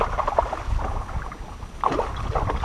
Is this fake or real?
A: real